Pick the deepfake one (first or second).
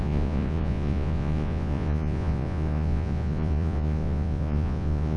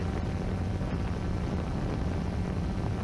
first